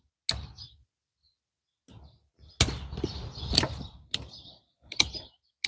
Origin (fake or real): real